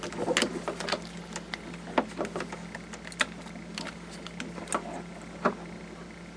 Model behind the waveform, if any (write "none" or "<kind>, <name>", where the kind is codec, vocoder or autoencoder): none